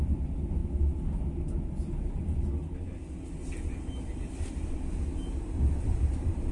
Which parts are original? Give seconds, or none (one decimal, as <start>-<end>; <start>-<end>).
0.0-6.5